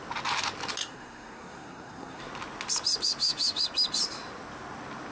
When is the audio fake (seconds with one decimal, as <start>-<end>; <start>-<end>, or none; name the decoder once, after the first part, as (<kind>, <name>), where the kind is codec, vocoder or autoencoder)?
0.8-2.2 (codec, SNAC)